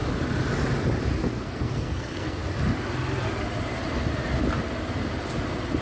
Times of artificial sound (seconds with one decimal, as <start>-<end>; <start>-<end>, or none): 1.2-2.4